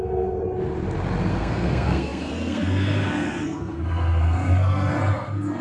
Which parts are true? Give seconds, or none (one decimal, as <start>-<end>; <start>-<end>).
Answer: 0.4-1.3